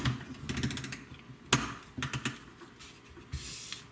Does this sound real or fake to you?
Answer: real